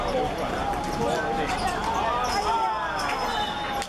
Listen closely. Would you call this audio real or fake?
real